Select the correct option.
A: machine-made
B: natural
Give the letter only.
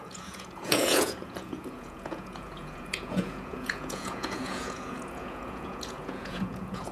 A